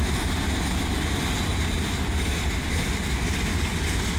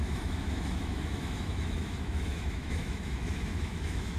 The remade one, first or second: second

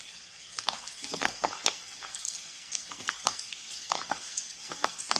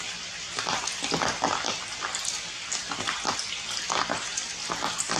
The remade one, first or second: first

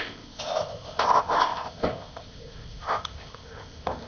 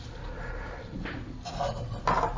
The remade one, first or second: first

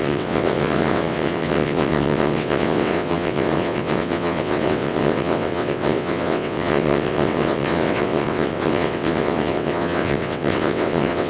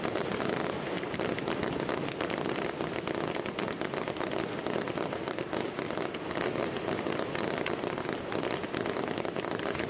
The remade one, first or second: first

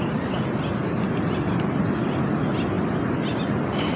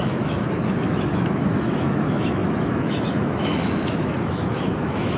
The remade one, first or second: second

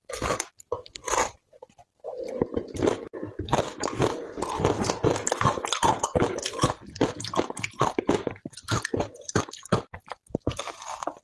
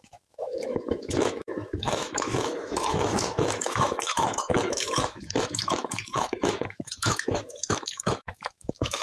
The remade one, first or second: second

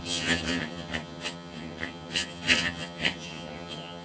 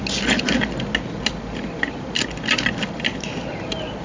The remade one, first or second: first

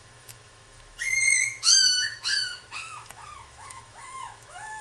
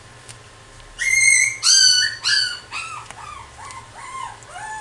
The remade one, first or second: first